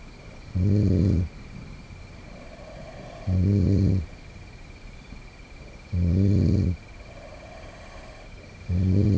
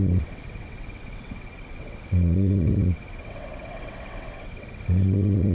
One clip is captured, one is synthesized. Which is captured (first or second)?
first